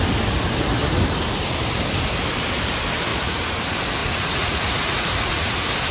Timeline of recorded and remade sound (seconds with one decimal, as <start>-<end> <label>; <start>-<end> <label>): 0.0-3.1 recorded; 3.1-3.6 remade; 3.6-4.0 recorded; 4.0-5.5 remade; 5.5-5.9 recorded